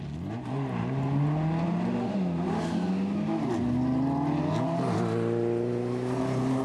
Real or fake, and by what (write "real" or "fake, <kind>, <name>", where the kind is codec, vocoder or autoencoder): real